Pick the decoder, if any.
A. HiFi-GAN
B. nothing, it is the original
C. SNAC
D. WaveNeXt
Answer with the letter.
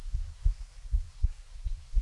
C